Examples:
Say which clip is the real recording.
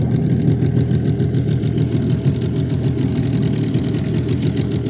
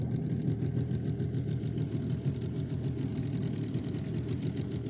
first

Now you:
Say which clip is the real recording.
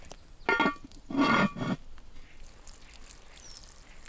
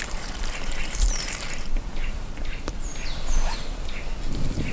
first